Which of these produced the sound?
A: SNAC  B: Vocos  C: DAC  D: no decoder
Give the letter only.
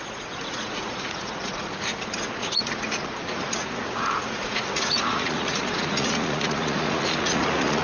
B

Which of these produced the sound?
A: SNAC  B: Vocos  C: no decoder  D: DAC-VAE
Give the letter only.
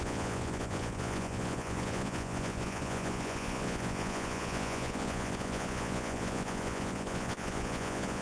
B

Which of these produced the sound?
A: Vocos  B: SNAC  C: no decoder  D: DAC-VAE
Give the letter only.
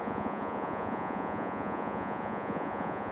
A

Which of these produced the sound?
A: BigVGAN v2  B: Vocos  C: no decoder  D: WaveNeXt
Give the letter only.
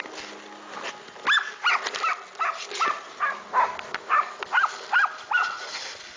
C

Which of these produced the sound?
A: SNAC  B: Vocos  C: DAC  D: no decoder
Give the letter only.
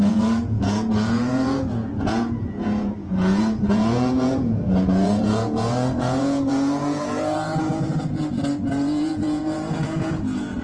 B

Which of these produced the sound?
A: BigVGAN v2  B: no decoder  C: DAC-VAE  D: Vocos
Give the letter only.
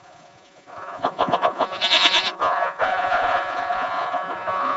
D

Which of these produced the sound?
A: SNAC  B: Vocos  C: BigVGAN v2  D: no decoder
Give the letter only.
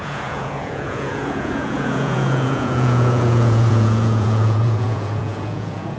B